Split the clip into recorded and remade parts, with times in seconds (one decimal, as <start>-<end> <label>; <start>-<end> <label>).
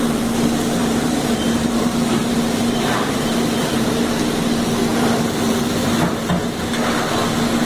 0.0-0.8 recorded; 0.8-4.1 remade; 4.1-4.9 recorded; 4.9-6.3 remade; 6.3-7.7 recorded